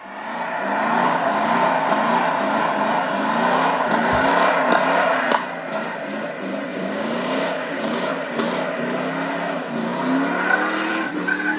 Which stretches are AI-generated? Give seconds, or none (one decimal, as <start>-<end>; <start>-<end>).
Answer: 1.0-1.9; 6.7-8.1